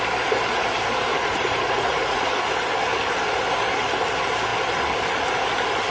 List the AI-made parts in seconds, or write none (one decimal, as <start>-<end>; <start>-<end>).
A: 1.1-2.3